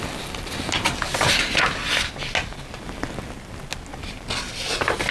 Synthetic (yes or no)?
no